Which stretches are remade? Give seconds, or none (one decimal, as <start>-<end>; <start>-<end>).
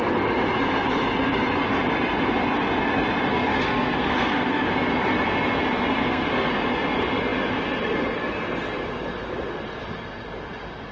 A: 3.3-4.6; 6.0-6.5